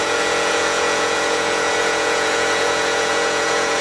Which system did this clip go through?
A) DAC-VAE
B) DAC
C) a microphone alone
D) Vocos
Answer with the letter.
D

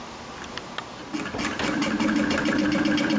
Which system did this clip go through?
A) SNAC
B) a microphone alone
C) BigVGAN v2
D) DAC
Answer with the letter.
B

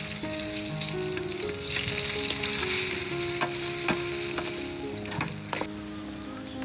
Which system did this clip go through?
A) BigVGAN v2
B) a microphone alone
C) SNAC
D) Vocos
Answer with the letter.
B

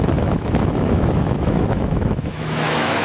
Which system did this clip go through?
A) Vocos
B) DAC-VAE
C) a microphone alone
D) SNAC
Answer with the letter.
B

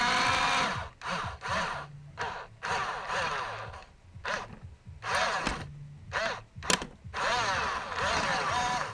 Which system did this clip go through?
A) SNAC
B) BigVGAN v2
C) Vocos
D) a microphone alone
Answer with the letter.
D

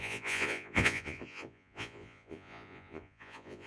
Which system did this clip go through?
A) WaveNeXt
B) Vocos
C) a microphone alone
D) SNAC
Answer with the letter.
B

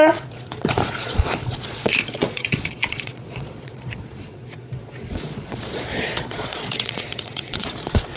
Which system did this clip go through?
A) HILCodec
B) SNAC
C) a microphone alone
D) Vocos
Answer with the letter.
D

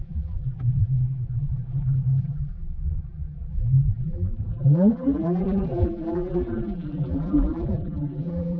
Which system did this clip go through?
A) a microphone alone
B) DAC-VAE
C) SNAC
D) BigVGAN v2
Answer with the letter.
D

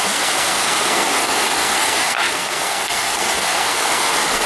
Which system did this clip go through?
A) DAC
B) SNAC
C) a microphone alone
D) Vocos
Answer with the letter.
B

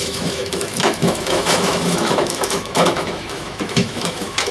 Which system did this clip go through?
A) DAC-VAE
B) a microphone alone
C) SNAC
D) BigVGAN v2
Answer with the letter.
A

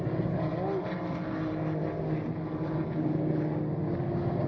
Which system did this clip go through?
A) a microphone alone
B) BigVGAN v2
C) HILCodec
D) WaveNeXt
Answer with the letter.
A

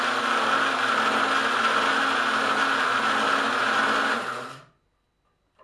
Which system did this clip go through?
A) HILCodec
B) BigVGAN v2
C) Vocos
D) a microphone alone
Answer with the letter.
D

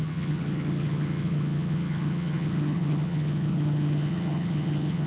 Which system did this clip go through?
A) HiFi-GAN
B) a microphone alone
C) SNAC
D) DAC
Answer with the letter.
A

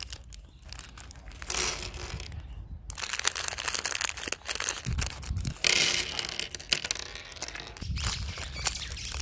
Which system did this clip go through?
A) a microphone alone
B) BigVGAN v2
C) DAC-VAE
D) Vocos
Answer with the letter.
A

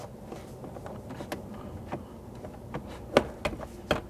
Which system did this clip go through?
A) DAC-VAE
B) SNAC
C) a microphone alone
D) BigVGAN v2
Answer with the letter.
C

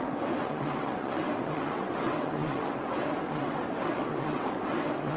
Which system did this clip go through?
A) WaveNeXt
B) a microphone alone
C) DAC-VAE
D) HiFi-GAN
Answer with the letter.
A